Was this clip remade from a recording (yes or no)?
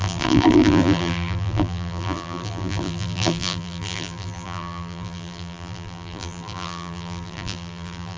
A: yes